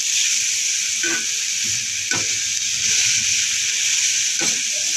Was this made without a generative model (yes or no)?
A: yes